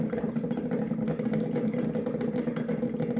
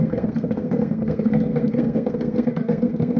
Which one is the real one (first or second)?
first